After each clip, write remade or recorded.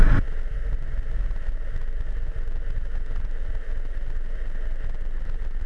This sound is recorded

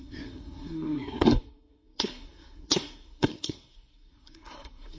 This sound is remade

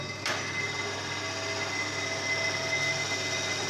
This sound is recorded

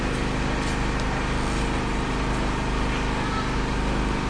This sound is recorded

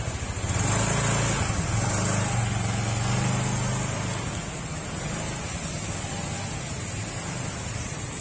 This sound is recorded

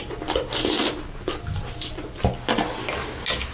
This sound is recorded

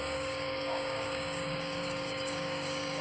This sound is remade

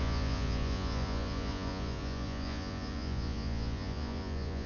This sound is remade